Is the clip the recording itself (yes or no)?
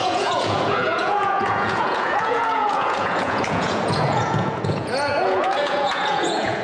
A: no